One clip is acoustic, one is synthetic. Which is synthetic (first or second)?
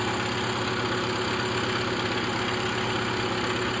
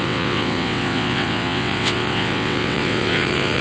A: second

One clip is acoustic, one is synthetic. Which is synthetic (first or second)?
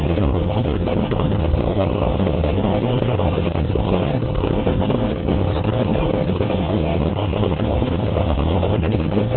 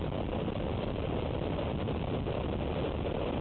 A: first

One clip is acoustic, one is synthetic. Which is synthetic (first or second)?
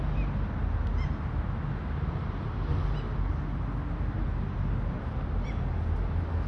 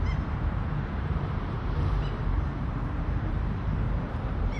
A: second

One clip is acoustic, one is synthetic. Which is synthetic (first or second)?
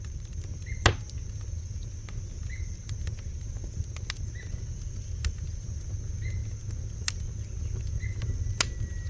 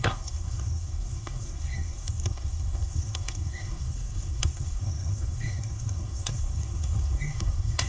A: second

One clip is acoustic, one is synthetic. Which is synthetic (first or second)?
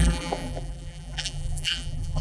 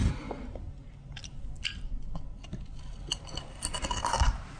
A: first